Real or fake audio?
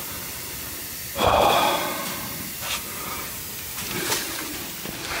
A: real